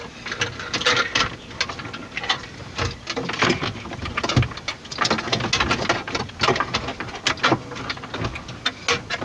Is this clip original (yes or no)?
yes